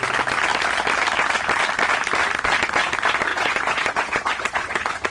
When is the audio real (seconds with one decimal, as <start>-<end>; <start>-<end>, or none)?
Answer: 0.0-3.3